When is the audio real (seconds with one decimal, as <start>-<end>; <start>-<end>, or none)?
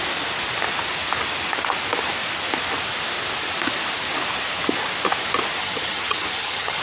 0.0-5.6